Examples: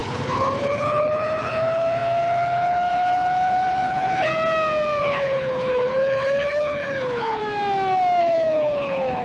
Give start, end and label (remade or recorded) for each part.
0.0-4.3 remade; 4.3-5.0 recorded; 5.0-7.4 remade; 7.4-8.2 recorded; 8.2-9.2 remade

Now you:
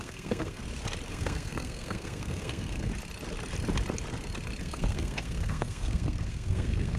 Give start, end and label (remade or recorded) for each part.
0.0-0.6 remade; 0.6-1.1 recorded; 1.1-2.9 remade; 2.9-4.6 recorded; 4.6-7.0 remade

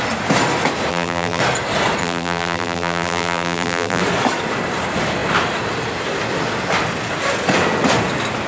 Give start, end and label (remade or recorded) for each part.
0.0-0.9 recorded; 0.9-1.4 remade; 1.4-2.0 recorded; 2.0-4.0 remade; 4.0-8.5 recorded

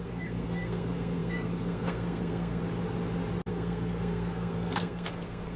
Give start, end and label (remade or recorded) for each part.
0.0-2.6 remade; 2.6-3.5 recorded; 3.5-5.6 remade

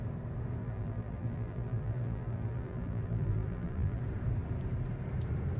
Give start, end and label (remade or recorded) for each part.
0.0-0.6 recorded; 0.6-4.0 remade; 4.0-5.6 recorded